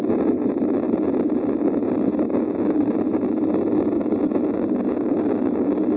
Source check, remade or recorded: recorded